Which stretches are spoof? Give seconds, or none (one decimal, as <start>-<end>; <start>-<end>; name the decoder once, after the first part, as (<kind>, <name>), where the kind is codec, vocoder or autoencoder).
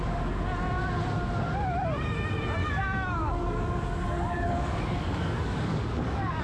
2.6-6.4 (codec, DAC)